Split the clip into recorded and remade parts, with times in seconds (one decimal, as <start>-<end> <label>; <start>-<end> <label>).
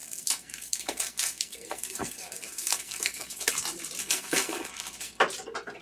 0.0-3.5 remade; 3.5-4.0 recorded; 4.0-5.2 remade; 5.2-5.8 recorded